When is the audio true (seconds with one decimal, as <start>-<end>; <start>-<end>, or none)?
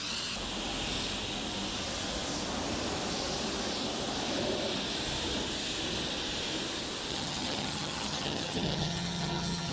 0.0-7.1